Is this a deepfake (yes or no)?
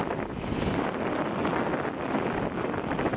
no